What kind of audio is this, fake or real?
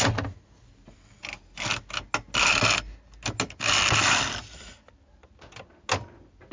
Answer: real